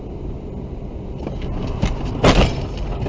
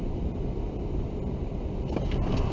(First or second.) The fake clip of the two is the second